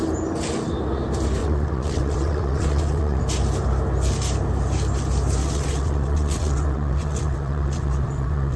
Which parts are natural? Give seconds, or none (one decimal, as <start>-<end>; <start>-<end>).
0.0-1.4; 3.2-5.4